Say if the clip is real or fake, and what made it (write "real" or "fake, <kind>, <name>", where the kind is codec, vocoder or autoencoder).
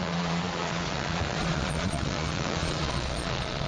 fake, vocoder, Vocos